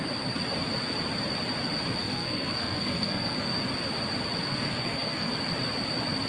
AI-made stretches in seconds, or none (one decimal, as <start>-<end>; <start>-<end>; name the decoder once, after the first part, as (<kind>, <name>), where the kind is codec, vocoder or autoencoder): 2.0-3.6 (codec, SNAC); 4.5-5.3